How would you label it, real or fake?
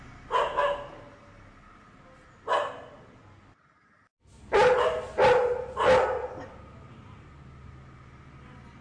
real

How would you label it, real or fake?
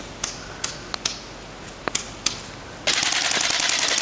real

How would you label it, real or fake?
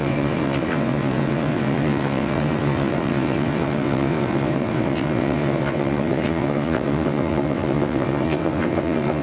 fake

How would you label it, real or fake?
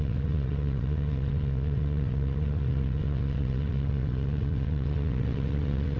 fake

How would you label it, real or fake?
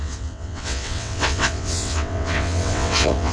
fake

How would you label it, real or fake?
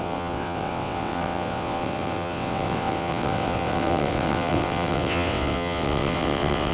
fake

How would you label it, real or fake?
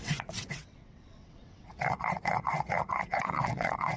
fake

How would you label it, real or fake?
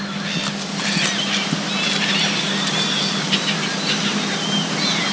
real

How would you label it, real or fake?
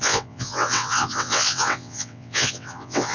fake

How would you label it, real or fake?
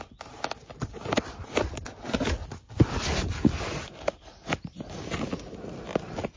real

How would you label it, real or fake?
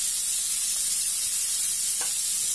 real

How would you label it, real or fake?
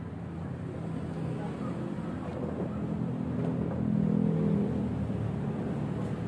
real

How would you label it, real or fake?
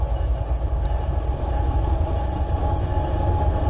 real